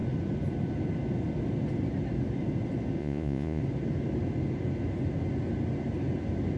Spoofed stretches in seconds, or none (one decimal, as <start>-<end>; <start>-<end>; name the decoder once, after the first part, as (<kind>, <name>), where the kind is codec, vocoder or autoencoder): 3.0-3.6 (vocoder, Vocos)